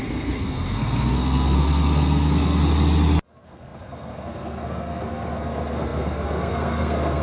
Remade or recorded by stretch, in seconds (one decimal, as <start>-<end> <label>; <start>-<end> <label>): 0.0-2.6 remade; 2.6-3.3 recorded; 3.3-7.2 remade